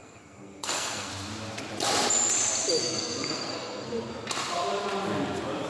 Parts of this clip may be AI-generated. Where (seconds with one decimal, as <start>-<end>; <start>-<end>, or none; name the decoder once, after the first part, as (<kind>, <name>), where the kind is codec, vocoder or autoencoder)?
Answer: 0.0-1.1 (codec, SNAC); 2.8-4.1

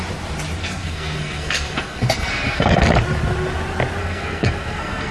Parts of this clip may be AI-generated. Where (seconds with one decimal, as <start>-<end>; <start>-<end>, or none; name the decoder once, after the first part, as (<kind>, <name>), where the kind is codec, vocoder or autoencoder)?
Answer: 0.6-2.8 (codec, SNAC); 4.0-5.1

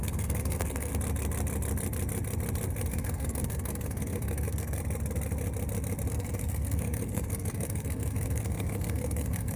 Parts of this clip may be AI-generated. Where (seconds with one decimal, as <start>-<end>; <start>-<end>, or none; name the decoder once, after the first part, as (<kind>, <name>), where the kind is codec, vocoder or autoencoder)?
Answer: 0.0-0.9 (codec, SNAC); 2.9-4.8; 6.1-9.6

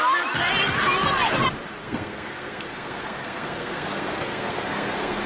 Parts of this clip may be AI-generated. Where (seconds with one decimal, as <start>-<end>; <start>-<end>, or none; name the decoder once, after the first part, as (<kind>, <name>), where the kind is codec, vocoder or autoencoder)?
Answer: 1.8-5.3 (codec, SNAC)

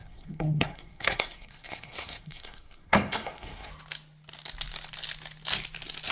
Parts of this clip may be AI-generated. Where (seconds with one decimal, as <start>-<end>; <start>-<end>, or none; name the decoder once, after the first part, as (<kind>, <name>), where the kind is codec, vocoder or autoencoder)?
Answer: 0.0-3.7 (codec, SNAC)

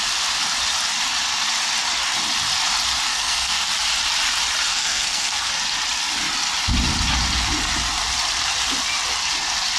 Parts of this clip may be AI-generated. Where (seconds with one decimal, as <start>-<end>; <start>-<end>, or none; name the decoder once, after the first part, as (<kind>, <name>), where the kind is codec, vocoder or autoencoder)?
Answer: 3.1-3.7 (codec, SNAC); 4.7-5.5

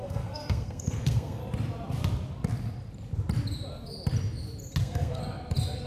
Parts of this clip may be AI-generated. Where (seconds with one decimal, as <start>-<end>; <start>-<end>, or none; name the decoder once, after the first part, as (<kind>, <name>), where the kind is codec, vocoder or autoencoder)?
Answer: 0.0-1.4 (codec, SNAC); 4.8-5.2

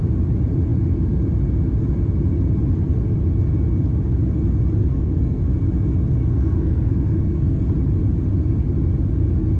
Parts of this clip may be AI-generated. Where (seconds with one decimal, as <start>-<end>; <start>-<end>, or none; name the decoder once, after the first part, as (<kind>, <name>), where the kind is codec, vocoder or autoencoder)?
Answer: 4.8-5.4 (codec, SNAC); 6.2-7.6